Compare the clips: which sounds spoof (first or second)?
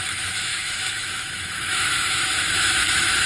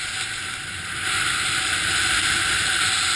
first